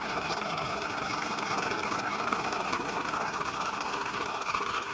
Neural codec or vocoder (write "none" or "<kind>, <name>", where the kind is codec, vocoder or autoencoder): codec, SNAC